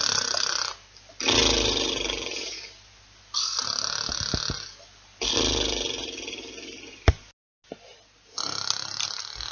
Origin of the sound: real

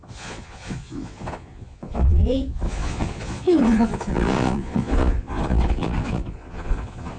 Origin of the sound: fake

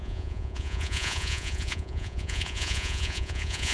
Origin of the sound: fake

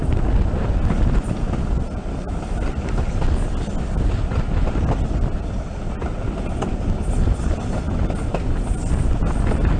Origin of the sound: real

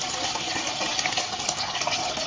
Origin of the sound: real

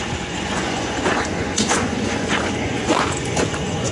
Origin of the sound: fake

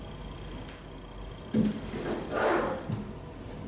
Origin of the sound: real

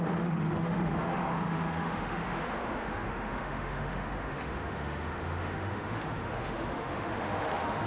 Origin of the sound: fake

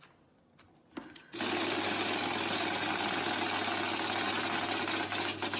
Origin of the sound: real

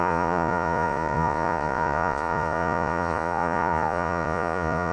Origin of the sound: fake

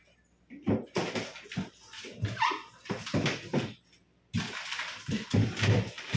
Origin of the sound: fake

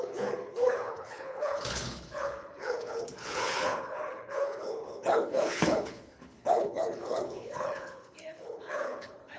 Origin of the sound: fake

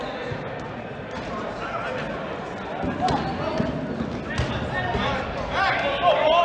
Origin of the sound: real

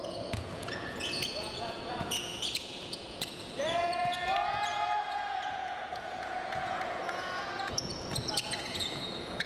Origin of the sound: fake